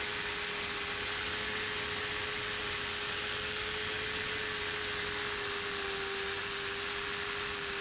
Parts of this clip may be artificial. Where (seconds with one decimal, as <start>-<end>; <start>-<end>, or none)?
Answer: none

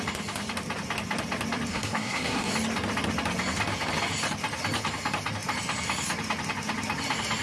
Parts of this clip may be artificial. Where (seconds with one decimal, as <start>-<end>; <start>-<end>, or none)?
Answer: 1.7-2.5

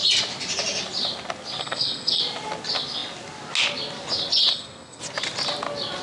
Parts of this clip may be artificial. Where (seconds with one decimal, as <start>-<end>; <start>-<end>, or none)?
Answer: 1.6-2.2; 4.5-5.0

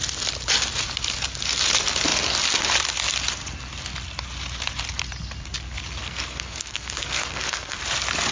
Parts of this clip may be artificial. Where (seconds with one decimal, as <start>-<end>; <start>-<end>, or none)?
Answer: 6.0-7.8

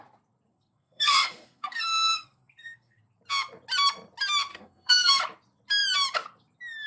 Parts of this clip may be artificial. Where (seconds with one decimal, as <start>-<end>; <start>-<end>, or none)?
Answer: 0.5-3.0; 4.5-5.2